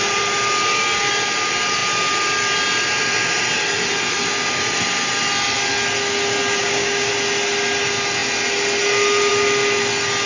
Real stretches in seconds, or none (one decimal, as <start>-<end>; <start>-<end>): 0.0-6.6; 7.1-10.3